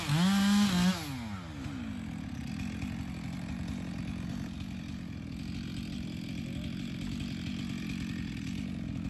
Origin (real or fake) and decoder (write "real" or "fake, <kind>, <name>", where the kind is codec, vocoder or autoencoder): real